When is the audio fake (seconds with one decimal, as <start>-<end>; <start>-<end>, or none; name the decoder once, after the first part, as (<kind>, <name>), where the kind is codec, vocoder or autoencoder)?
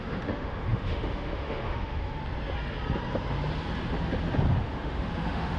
0.0-2.2 (autoencoder, DAC-VAE); 4.6-5.6